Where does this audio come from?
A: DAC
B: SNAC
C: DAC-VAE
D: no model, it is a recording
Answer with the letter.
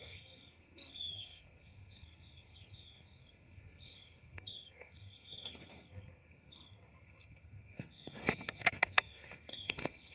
B